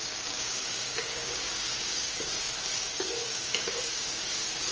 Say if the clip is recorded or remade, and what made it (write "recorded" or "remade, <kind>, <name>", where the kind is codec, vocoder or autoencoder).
remade, codec, DAC